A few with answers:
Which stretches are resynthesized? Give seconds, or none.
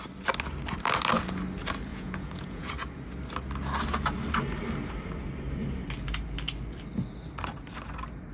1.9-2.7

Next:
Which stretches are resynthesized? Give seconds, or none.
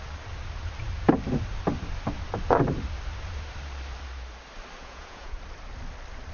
4.8-5.4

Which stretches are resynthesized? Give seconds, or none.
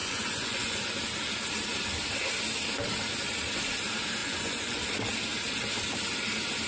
0.0-0.8; 4.2-4.8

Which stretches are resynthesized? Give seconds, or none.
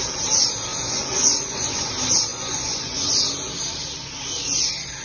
0.7-1.9; 2.3-3.1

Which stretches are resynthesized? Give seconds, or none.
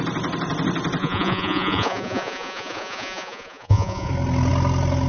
1.0-4.1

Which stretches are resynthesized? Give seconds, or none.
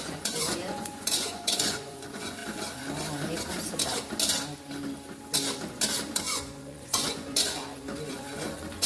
0.0-2.4; 6.2-7.6; 8.1-8.9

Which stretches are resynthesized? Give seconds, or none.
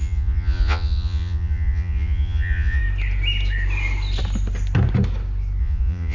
0.0-2.8; 5.6-6.1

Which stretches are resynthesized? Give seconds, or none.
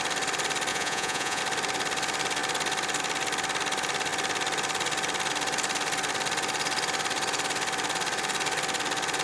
0.7-1.4